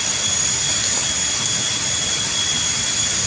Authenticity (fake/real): real